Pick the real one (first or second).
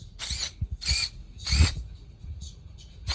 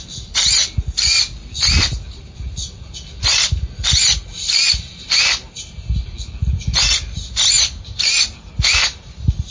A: second